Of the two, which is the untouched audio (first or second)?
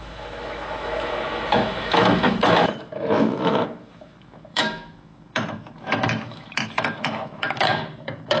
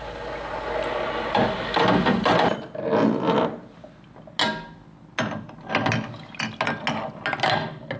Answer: second